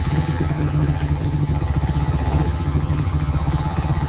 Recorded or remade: remade